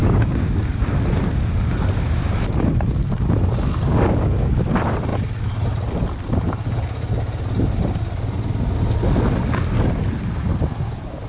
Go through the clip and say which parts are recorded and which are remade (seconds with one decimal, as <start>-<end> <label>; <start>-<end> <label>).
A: 0.0-0.6 remade; 0.6-3.9 recorded; 3.9-4.5 remade; 4.5-11.3 recorded